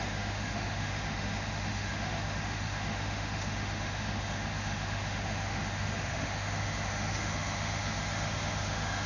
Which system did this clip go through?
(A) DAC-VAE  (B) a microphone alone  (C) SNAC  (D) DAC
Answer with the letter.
A